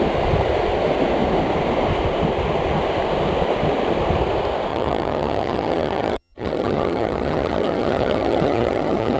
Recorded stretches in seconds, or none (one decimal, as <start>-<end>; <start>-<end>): 0.0-4.7